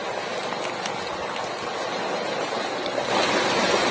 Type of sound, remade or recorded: recorded